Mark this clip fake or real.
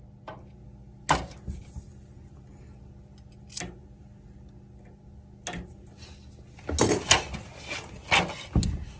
real